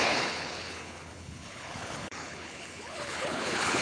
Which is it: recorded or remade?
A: remade